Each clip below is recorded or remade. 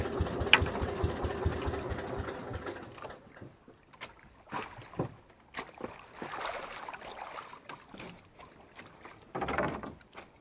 recorded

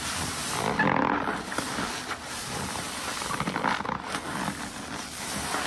recorded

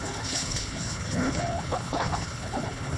remade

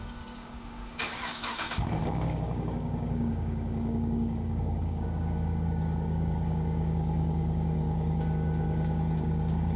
remade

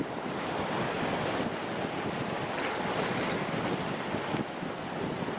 recorded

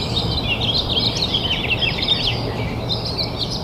recorded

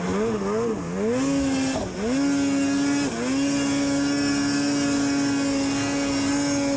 recorded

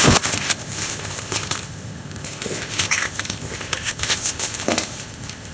remade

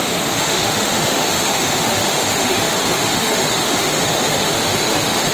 remade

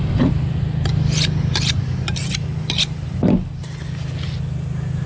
recorded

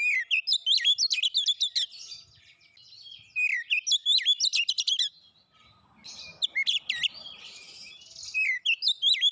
recorded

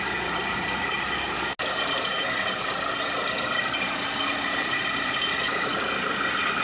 recorded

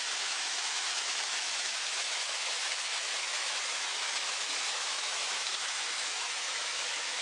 remade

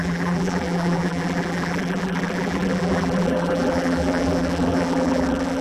remade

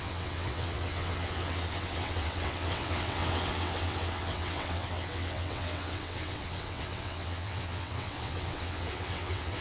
remade